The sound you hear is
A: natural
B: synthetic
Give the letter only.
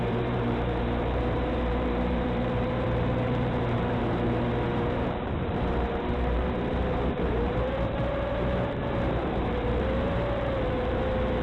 B